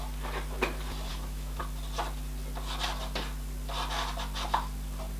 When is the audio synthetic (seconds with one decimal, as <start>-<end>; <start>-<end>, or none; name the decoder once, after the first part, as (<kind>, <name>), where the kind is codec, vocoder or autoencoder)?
1.1-1.6 (autoencoder, DAC-VAE)